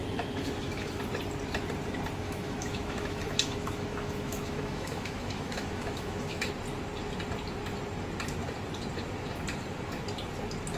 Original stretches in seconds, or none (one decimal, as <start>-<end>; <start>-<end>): 1.0-2.2; 6.5-10.8